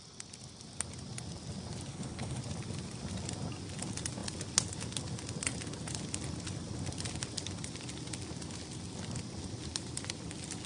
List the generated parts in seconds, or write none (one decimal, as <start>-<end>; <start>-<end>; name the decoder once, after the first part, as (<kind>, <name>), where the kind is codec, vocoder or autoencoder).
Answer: 1.9-2.4 (codec, HILCodec)

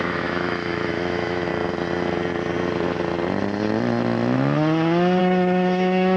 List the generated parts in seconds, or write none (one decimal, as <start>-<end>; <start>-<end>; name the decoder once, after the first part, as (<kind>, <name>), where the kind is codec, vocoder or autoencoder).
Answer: 0.0-1.5 (autoencoder, DAC-VAE); 5.2-6.2

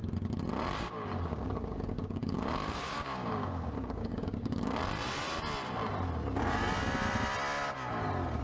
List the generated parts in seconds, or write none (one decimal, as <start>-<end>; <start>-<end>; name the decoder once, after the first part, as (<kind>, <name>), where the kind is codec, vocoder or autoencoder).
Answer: 0.8-4.8 (codec, DAC)

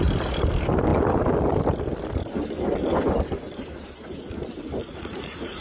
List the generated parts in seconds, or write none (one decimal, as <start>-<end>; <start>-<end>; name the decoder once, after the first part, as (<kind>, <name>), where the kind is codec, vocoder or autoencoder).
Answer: 4.8-5.6 (vocoder, Vocos)

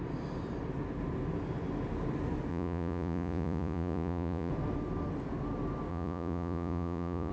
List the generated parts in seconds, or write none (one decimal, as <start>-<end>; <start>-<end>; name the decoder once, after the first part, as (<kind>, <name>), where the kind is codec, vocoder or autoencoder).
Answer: 2.5-4.5 (vocoder, Vocos); 5.9-7.3